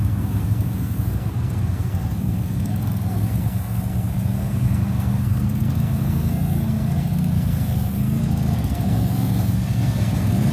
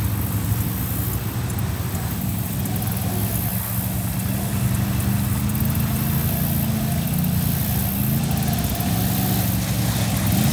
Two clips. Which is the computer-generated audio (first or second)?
first